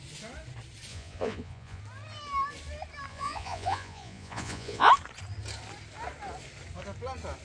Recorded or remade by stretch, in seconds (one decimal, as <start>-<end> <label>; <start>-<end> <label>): 0.0-0.9 recorded; 0.9-1.8 remade; 1.8-3.1 recorded; 3.1-4.9 remade; 4.9-7.4 recorded